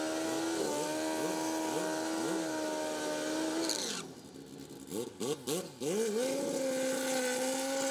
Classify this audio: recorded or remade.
recorded